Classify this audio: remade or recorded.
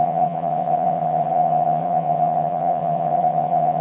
remade